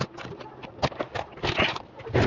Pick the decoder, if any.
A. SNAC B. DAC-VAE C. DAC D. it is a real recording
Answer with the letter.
D